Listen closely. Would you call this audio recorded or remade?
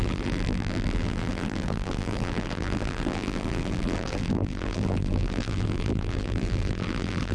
remade